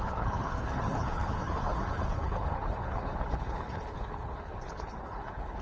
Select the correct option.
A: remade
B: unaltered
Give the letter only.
A